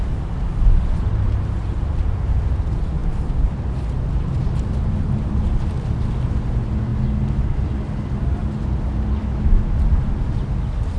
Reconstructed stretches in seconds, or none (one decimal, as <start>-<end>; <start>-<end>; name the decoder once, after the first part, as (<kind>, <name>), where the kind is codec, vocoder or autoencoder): 9.2-9.7 (autoencoder, DAC-VAE)